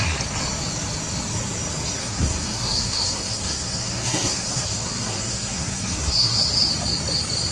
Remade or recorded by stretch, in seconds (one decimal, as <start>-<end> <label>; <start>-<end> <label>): 0.0-2.0 recorded; 2.0-6.5 remade; 6.5-7.5 recorded